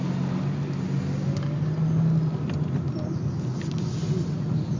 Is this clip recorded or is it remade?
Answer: recorded